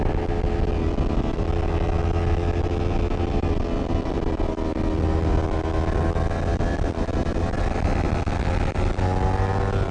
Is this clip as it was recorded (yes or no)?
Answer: yes